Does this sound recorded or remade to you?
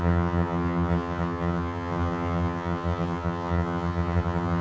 remade